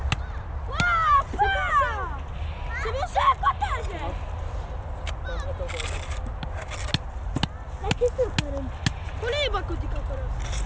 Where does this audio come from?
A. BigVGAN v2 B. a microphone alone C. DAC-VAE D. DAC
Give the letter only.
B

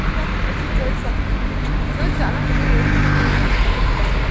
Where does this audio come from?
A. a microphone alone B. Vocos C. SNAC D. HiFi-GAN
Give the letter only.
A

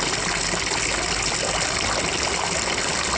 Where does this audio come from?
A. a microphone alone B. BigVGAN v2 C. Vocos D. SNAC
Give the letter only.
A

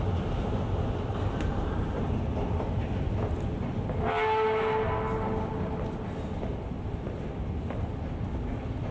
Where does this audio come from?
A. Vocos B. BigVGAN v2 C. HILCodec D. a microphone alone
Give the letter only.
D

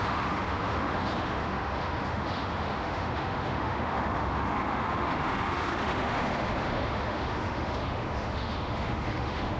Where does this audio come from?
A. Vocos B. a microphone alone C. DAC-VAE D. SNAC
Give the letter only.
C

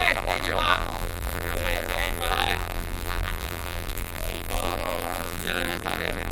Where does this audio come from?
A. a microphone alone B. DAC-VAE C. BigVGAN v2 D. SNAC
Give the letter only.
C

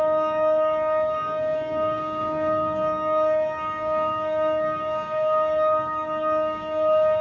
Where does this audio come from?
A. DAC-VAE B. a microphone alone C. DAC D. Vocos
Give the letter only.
C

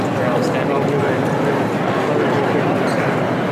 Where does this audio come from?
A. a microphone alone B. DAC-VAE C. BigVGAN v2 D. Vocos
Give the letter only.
A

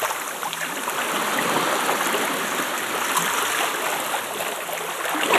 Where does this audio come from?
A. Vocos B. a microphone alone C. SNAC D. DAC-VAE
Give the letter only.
B